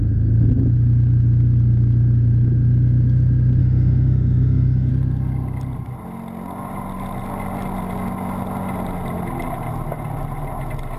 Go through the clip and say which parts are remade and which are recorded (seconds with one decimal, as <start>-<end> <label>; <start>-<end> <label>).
0.0-3.6 recorded; 3.6-4.9 remade; 4.9-11.0 recorded